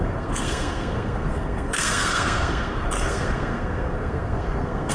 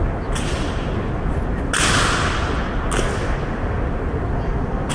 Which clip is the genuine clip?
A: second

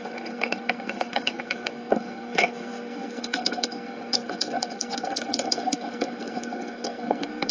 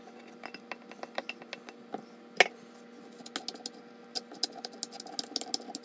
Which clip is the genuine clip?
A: second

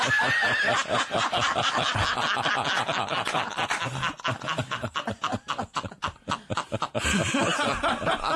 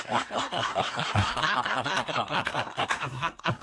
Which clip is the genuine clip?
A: first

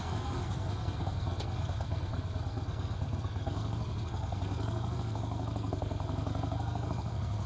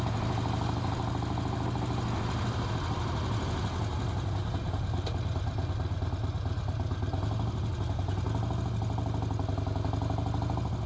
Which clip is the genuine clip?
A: second